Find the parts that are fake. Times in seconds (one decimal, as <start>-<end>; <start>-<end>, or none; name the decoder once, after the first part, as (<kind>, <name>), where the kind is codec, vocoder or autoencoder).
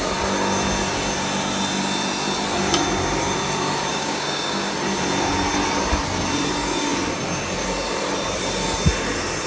3.9-4.7 (codec, DAC)